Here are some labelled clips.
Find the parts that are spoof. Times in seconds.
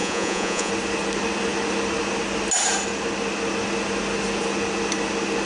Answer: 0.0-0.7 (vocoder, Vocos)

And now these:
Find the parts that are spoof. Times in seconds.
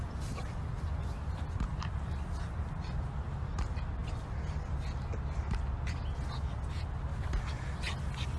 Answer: none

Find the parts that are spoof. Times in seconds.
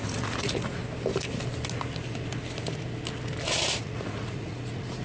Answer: 0.0-0.8 (vocoder, Vocos); 3.8-5.0